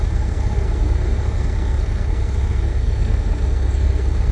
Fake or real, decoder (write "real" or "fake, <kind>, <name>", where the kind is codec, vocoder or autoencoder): fake, codec, SNAC